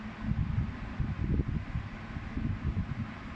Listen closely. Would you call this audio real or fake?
real